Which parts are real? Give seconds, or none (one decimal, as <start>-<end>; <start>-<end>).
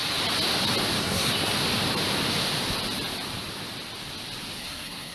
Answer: 0.0-1.0; 1.5-4.6